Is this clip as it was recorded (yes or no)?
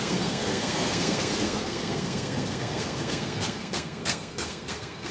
no